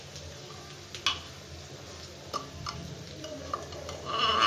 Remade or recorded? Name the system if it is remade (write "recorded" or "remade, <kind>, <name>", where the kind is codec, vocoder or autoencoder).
recorded